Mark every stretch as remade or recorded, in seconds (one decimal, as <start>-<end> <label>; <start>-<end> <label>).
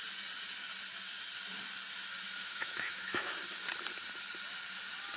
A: 0.0-2.4 recorded; 2.4-3.3 remade; 3.3-5.2 recorded